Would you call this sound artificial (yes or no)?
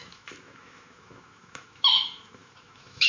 yes